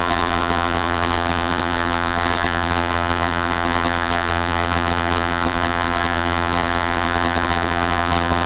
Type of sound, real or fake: fake